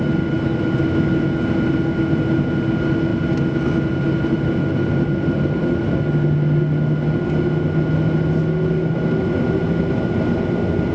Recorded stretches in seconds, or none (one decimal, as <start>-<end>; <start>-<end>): 0.0-10.9